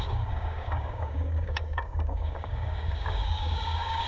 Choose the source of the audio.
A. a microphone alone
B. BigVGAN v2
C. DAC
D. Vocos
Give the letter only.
C